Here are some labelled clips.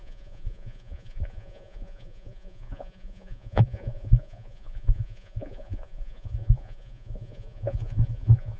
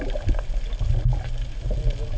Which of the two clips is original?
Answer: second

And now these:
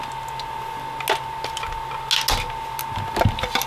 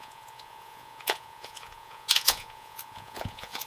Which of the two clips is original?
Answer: first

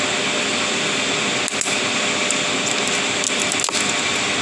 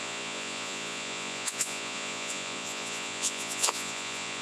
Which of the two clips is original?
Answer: first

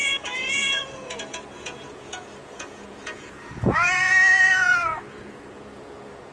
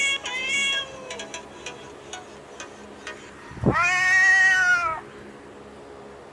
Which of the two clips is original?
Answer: second